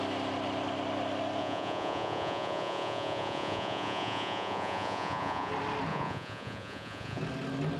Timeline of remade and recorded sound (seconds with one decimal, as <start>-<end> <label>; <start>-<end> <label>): 0.0-1.4 recorded; 1.4-5.5 remade; 5.5-5.9 recorded; 5.9-7.2 remade; 7.2-7.8 recorded